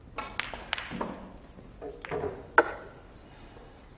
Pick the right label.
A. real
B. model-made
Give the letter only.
A